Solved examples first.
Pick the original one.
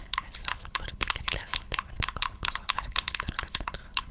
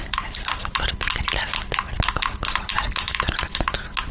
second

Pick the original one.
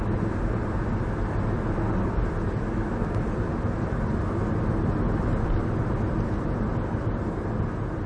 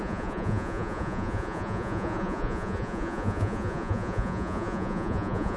first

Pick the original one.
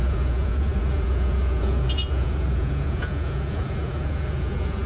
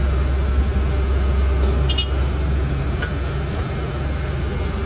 second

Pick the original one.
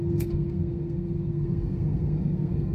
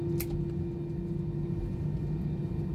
second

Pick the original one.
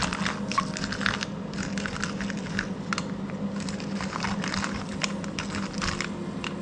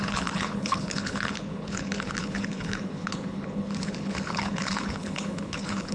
first